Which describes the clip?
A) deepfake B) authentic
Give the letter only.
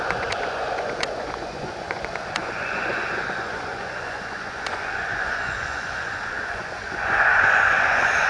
A